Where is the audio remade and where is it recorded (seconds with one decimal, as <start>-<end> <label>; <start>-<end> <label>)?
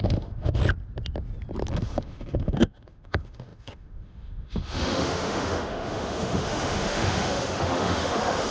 0.0-0.6 remade; 0.6-1.7 recorded; 1.7-8.5 remade